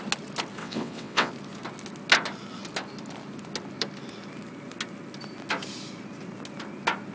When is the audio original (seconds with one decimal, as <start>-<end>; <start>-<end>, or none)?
0.0-0.6; 1.3-7.1